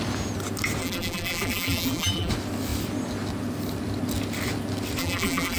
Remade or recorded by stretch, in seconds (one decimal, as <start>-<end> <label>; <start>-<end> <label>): 0.0-0.8 recorded; 0.8-2.3 remade; 2.3-5.0 recorded; 5.0-5.6 remade